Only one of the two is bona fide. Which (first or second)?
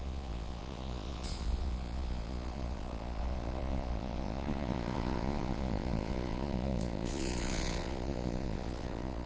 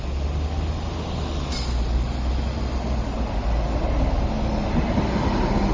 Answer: second